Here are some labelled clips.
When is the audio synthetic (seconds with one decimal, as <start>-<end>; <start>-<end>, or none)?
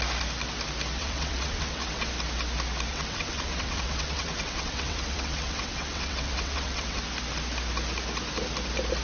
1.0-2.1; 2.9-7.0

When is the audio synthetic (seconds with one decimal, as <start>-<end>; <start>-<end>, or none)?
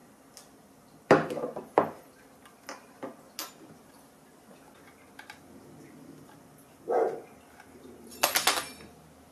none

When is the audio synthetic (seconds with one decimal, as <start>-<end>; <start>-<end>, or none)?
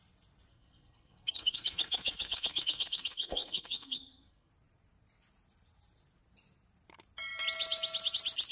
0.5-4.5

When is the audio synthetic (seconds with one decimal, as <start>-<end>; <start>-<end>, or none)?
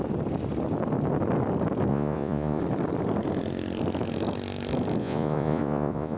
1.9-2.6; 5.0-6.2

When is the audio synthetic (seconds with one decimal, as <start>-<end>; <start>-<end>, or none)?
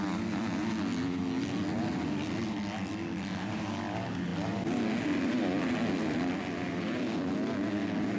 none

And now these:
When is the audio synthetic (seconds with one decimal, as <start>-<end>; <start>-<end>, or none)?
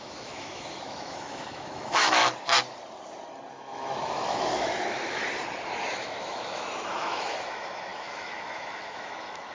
0.0-2.2; 3.5-5.2; 5.9-9.5